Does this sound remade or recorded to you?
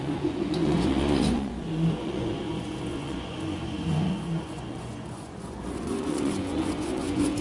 remade